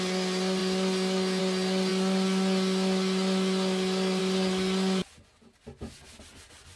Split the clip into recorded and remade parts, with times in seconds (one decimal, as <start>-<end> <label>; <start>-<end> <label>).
0.0-6.8 recorded